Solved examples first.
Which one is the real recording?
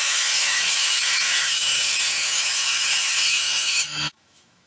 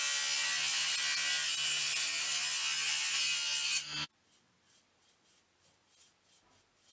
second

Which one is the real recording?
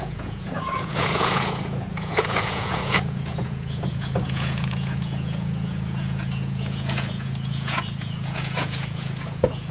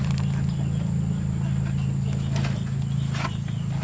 second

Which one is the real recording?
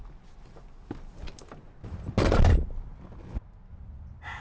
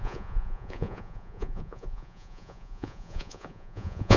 first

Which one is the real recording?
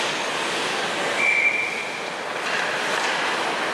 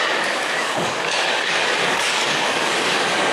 first